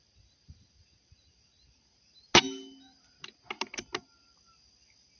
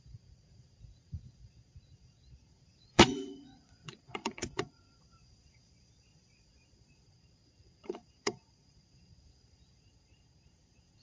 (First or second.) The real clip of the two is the first